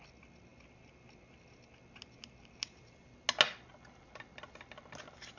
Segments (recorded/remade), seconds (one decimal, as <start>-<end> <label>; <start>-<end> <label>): 0.0-5.4 recorded